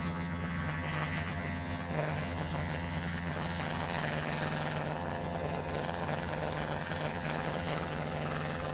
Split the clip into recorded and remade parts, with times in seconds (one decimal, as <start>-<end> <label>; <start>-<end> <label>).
0.0-8.7 remade